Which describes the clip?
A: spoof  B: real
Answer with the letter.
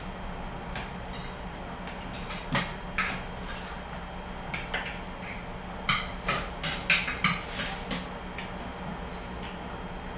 B